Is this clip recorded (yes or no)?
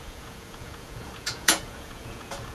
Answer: no